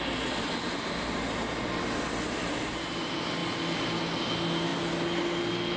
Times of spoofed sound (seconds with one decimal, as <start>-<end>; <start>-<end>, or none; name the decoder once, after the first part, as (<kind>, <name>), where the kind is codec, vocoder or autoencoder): none